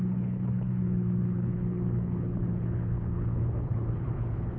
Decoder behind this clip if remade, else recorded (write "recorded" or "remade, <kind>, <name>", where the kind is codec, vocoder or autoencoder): remade, codec, HILCodec